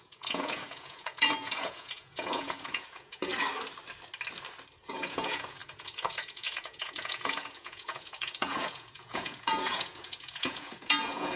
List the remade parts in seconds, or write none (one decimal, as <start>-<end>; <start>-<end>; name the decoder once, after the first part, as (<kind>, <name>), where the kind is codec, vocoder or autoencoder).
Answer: 0.0-3.3 (vocoder, Vocos); 4.9-11.4